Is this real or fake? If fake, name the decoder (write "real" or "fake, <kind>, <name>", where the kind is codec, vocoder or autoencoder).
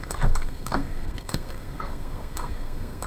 fake, codec, SNAC